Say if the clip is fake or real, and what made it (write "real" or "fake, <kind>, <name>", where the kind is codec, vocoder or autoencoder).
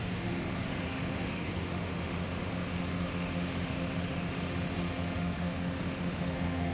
fake, autoencoder, DAC-VAE